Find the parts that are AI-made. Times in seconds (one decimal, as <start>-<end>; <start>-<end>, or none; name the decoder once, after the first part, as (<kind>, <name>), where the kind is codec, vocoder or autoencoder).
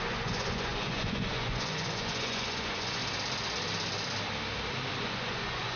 0.0-3.0 (vocoder, Vocos); 5.0-5.8